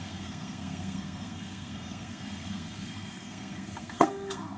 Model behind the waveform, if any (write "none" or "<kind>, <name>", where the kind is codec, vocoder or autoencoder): codec, SNAC